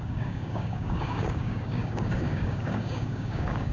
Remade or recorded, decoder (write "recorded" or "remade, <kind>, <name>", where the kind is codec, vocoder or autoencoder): remade, codec, DAC